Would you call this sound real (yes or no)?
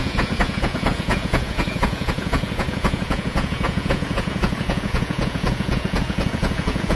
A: no